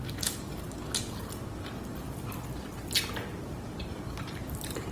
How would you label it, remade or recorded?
recorded